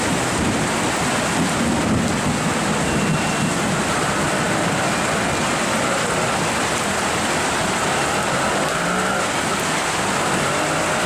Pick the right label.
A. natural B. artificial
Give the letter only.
A